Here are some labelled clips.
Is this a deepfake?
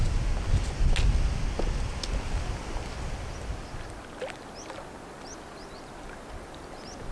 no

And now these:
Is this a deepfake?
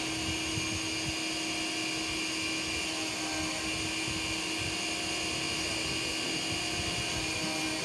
no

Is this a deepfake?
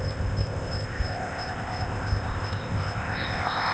yes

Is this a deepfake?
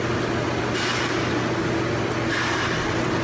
no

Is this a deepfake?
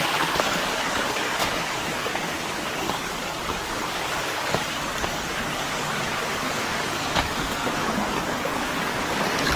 yes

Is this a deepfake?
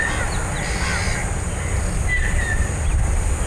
no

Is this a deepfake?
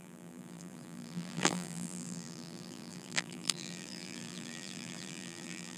yes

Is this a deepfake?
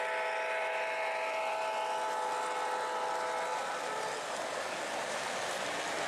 no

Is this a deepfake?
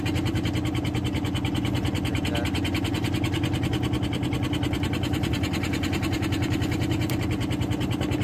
no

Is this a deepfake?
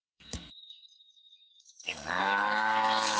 yes